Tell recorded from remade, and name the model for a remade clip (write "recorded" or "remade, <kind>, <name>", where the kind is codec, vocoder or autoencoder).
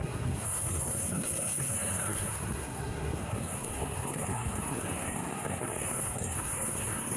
remade, codec, SNAC